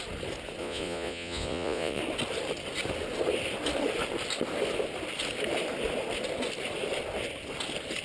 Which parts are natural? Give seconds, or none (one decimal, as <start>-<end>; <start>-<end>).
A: 0.0-0.6; 2.0-8.0